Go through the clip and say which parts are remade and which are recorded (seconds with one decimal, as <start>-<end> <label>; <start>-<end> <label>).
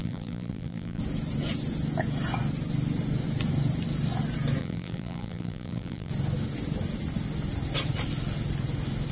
0.0-1.0 remade; 1.0-4.6 recorded; 4.6-6.1 remade; 6.1-9.1 recorded